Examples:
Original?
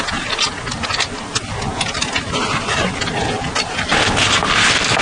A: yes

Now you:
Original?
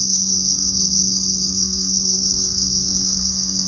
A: no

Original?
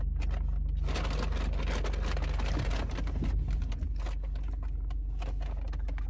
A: yes